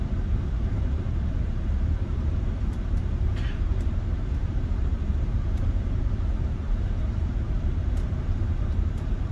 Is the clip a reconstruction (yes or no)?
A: yes